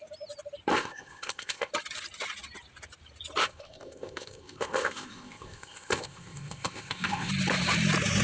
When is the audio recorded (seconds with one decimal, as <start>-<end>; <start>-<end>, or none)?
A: 0.0-0.7; 1.7-3.4; 7.3-8.2